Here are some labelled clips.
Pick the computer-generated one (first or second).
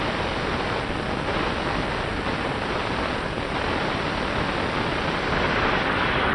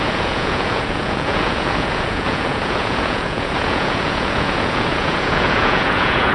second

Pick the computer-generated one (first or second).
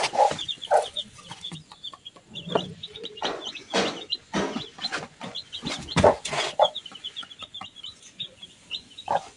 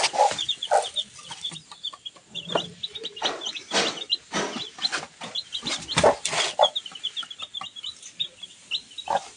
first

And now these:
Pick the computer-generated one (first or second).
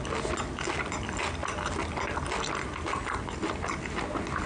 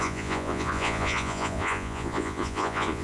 second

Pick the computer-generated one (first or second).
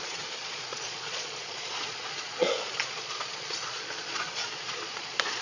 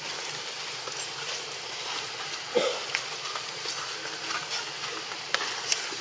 first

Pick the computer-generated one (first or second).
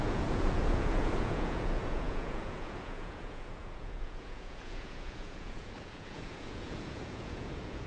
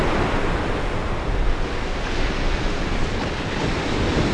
first